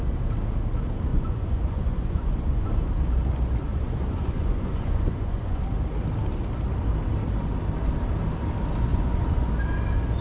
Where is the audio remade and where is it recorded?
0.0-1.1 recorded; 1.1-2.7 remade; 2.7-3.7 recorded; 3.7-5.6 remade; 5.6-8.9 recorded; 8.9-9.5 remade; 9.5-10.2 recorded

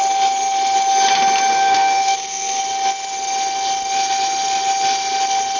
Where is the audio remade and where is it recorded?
0.0-1.5 recorded; 1.5-2.6 remade; 2.6-5.6 recorded